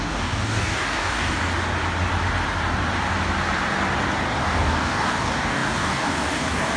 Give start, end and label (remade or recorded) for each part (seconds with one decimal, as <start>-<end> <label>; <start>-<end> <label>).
0.0-1.4 remade; 1.4-4.4 recorded; 4.4-6.8 remade